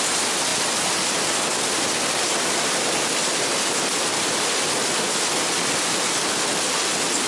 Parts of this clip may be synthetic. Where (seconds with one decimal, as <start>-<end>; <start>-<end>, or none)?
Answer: none